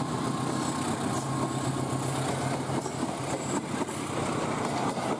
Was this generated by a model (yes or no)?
no